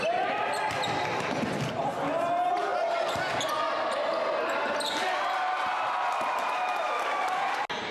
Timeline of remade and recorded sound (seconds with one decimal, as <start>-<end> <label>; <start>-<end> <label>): 0.0-7.9 recorded